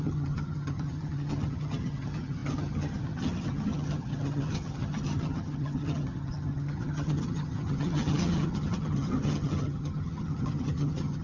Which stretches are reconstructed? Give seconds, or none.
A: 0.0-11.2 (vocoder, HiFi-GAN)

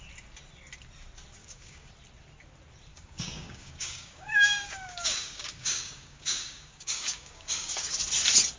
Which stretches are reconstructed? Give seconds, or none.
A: 1.4-1.9 (codec, DAC); 2.9-7.9

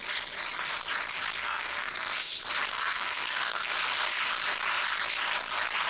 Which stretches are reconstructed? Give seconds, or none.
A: 1.4-2.3 (codec, SNAC); 2.7-3.7

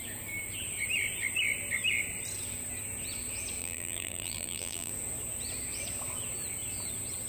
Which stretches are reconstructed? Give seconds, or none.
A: 3.6-4.9 (vocoder, BigVGAN v2)

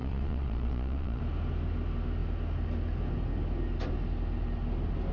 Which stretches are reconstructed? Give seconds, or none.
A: 0.0-1.2 (vocoder, Vocos)

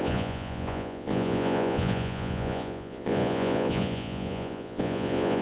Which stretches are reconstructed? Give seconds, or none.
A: 0.0-5.4 (vocoder, Vocos)